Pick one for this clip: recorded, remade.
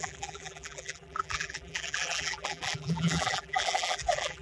remade